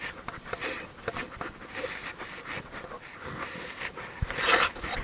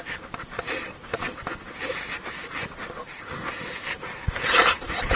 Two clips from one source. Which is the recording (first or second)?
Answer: first